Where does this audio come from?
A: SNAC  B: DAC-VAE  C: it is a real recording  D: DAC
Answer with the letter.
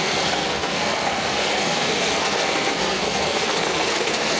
A